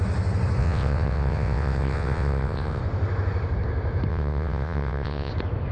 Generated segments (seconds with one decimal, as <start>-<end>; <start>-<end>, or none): 0.6-2.8; 4.1-5.3